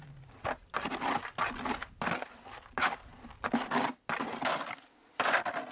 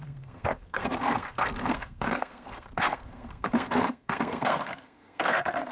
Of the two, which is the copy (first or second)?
second